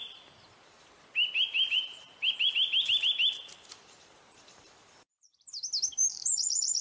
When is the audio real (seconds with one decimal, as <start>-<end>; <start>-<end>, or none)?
0.0-3.6; 5.3-6.1